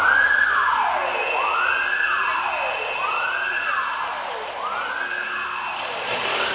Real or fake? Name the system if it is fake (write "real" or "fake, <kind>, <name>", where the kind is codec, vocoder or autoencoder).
real